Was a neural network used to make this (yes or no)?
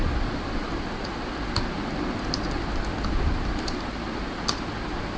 no